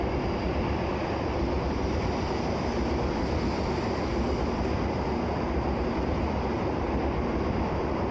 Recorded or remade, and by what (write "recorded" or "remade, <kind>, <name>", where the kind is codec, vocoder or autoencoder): recorded